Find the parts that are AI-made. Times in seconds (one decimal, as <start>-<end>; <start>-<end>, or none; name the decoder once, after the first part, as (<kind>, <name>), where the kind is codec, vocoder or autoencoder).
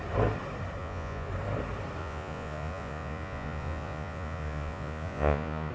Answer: 0.8-1.3 (vocoder, Vocos); 2.0-5.7